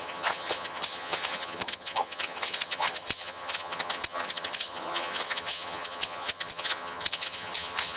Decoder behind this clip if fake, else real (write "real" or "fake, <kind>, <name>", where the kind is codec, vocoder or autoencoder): fake, vocoder, HiFi-GAN